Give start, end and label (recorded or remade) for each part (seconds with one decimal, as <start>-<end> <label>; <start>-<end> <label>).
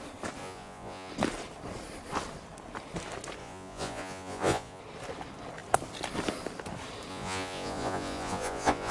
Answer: 0.0-0.4 recorded; 0.4-1.1 remade; 1.1-3.4 recorded; 3.4-4.8 remade; 4.8-7.1 recorded; 7.1-8.9 remade